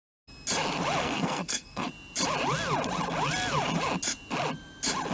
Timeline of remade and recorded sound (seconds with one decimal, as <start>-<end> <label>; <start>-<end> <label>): 0.0-1.0 recorded; 1.0-1.9 remade; 1.9-5.1 recorded

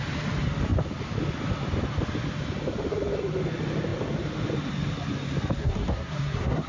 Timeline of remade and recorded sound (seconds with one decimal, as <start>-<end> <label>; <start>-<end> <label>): 0.0-5.6 recorded; 5.6-6.7 remade

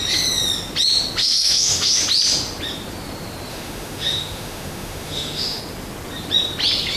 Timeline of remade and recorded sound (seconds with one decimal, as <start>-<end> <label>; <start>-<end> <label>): 0.0-1.2 recorded; 1.2-2.0 remade; 2.0-3.5 recorded; 3.5-5.6 remade; 5.6-7.0 recorded

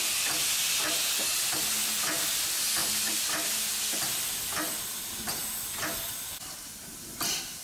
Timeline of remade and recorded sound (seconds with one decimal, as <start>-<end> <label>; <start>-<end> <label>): 0.0-2.8 recorded; 2.8-3.6 remade; 3.6-7.6 recorded

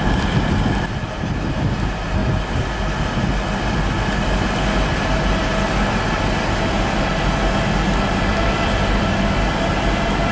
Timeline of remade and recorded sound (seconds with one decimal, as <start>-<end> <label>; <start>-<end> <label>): 0.0-8.3 recorded; 8.3-9.1 remade; 9.1-10.3 recorded

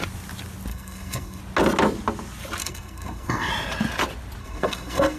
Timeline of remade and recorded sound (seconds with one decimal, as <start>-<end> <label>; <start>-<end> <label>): 0.0-0.7 recorded; 0.7-1.4 remade; 1.4-2.6 recorded; 2.6-3.5 remade; 3.5-4.4 recorded; 4.4-5.2 remade

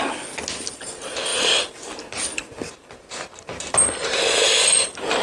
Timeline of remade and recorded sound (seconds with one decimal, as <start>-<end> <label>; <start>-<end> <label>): 0.0-5.2 recorded